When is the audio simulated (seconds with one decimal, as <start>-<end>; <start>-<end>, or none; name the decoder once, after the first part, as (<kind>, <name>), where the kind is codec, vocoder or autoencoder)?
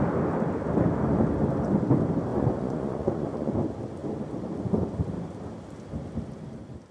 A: 2.3-3.5 (vocoder, Vocos)